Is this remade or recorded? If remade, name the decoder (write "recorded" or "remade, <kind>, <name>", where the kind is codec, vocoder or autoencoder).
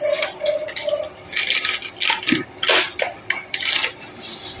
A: recorded